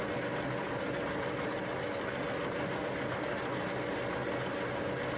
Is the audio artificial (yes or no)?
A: no